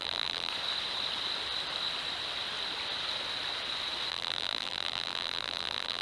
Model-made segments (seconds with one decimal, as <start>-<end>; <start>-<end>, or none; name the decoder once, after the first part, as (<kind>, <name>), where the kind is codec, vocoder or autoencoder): 0.0-0.5 (vocoder, BigVGAN v2); 4.1-6.0